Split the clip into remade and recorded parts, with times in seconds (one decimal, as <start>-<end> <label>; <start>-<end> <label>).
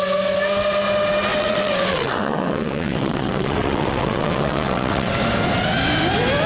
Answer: 0.0-1.3 recorded; 1.3-5.1 remade; 5.1-6.5 recorded